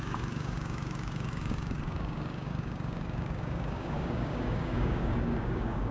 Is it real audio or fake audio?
fake